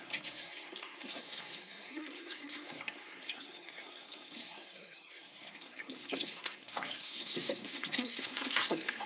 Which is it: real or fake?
fake